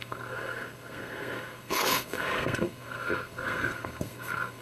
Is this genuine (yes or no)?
no